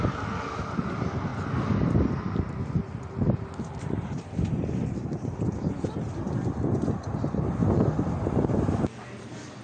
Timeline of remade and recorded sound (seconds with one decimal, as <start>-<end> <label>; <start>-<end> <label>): 0.0-9.6 recorded